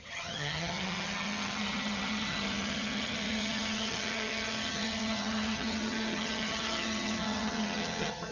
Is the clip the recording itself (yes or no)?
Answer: no